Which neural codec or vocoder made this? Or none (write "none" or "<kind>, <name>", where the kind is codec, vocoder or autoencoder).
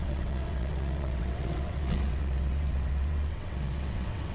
vocoder, WaveNeXt